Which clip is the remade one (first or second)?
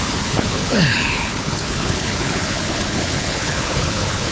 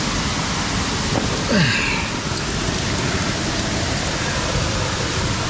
first